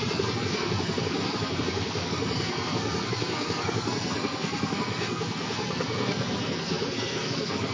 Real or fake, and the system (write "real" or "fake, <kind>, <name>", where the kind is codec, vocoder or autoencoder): fake, codec, SNAC